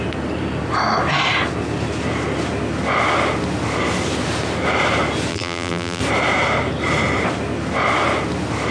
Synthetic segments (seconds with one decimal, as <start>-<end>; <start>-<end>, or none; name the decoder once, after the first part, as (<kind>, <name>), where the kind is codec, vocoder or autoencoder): 5.3-6.0 (vocoder, BigVGAN v2)